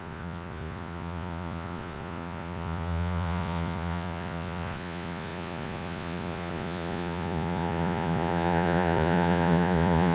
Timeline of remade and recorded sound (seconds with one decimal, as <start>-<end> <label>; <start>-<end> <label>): 0.0-10.1 remade